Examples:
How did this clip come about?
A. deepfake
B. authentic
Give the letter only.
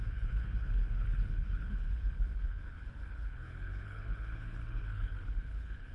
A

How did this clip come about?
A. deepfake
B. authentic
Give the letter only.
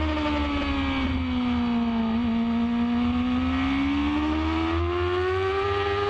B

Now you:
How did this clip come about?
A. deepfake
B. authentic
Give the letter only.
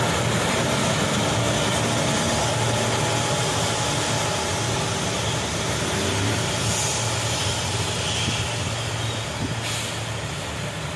B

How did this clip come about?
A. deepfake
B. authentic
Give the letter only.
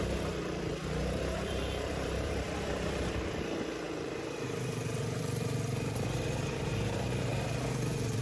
A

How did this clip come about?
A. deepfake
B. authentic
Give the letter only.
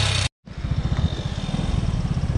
B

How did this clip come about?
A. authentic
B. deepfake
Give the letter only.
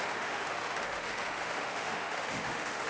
B